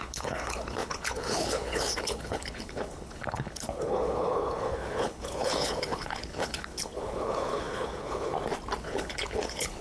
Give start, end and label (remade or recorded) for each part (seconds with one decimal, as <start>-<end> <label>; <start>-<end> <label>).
0.0-8.3 remade; 8.3-8.8 recorded; 8.8-9.8 remade